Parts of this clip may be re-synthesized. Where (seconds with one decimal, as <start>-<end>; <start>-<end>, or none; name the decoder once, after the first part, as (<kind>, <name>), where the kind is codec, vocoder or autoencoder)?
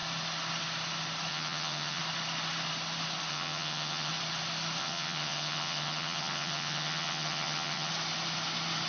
1.3-2.0 (vocoder, HiFi-GAN); 3.3-4.1; 4.8-7.9